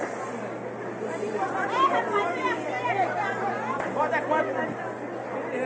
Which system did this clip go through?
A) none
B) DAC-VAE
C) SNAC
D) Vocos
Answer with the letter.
A